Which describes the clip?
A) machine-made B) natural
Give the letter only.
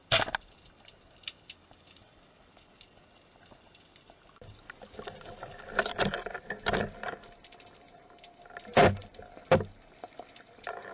B